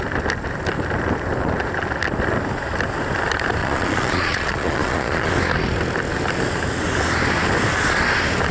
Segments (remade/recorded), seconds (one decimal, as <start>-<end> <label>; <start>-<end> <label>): 0.0-3.6 recorded; 3.6-5.3 remade; 5.3-8.5 recorded